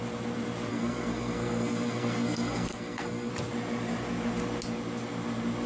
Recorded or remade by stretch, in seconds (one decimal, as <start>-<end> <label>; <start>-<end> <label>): 0.0-0.7 recorded; 0.7-3.3 remade; 3.3-5.7 recorded